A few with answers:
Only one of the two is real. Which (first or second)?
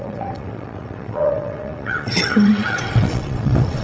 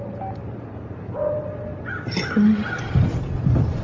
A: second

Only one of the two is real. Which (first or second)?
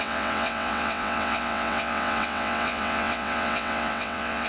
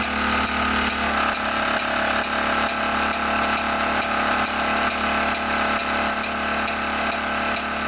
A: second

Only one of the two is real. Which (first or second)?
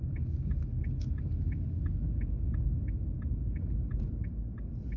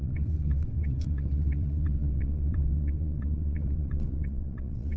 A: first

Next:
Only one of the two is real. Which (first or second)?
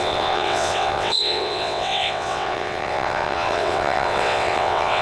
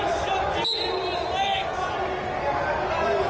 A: second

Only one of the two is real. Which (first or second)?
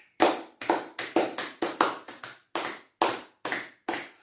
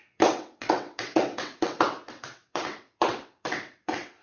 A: first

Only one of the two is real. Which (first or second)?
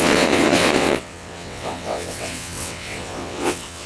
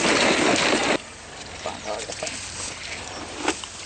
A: second